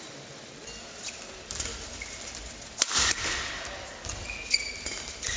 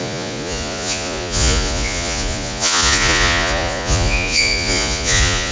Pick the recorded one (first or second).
first